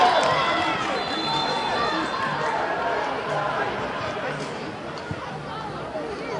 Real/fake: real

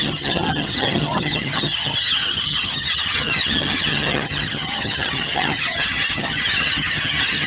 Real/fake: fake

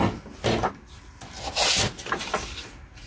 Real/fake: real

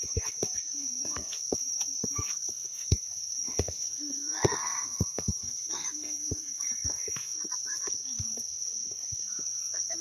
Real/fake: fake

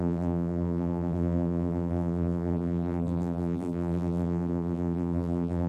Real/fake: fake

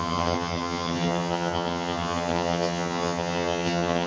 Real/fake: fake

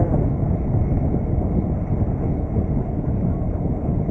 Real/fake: real